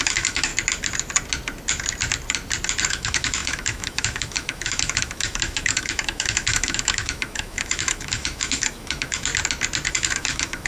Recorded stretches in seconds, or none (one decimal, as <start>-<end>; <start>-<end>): 0.5-2.9; 9.3-9.9